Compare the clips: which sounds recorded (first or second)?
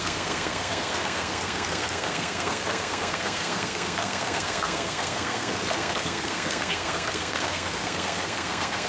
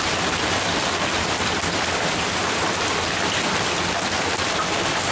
second